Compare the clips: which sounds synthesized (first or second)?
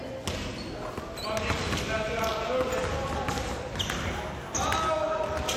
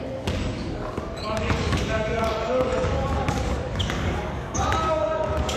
second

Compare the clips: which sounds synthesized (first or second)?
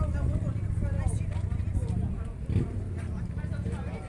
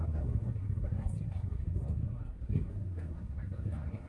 second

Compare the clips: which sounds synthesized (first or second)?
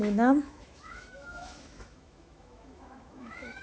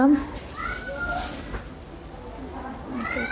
first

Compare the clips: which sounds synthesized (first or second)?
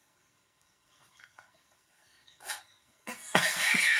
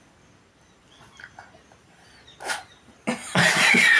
first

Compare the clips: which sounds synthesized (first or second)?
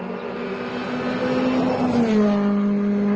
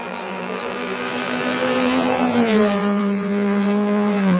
second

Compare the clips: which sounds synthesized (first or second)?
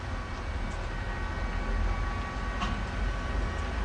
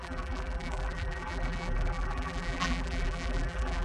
second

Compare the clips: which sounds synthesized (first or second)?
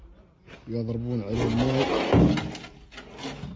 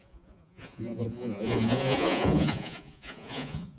second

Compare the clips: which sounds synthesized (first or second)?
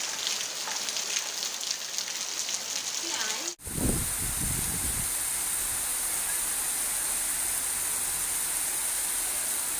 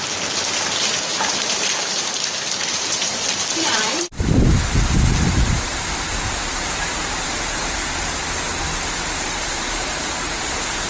second